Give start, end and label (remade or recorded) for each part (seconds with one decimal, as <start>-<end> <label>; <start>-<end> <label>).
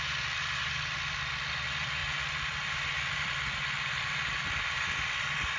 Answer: 0.0-2.0 remade; 2.0-3.1 recorded; 3.1-5.6 remade